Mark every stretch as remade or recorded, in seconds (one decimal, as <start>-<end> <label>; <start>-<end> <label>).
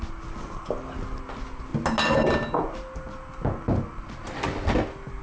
0.0-5.2 recorded